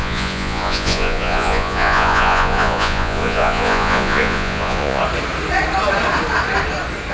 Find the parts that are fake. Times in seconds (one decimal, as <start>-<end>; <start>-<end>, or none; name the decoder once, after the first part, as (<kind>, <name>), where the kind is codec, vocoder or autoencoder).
0.0-5.0 (vocoder, Vocos)